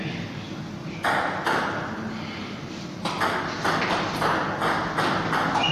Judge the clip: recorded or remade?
recorded